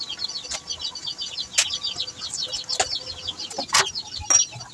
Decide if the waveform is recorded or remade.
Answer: recorded